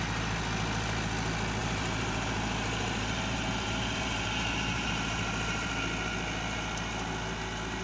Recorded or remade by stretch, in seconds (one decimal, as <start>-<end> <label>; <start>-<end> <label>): 0.0-1.6 recorded; 1.6-5.7 remade; 5.7-7.8 recorded